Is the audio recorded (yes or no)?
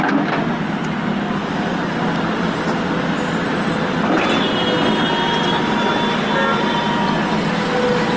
yes